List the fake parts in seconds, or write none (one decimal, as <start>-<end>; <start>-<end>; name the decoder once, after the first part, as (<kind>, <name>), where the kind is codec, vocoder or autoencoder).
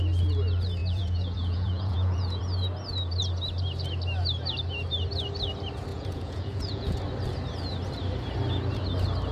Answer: 0.8-2.4 (vocoder, Vocos); 5.9-7.0